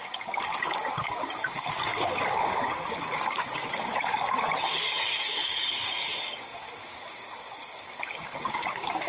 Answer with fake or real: fake